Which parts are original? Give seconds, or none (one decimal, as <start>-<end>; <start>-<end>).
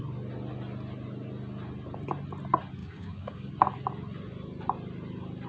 0.0-2.8; 3.5-5.5